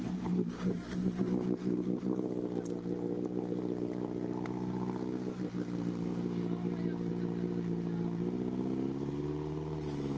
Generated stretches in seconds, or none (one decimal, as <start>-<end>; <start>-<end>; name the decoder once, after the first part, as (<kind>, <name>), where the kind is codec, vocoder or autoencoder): none